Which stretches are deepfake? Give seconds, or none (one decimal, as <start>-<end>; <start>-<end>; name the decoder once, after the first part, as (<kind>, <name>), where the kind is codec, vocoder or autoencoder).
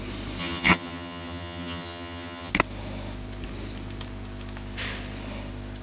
0.4-2.5 (vocoder, HiFi-GAN)